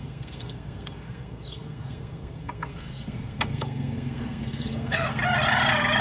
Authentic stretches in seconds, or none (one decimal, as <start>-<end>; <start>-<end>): 5.2-6.0